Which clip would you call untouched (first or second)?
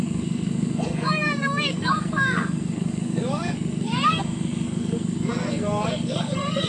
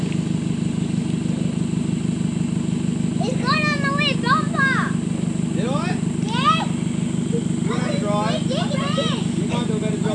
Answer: second